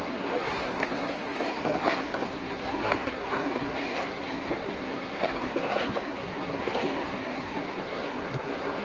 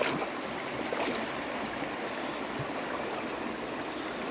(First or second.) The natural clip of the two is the second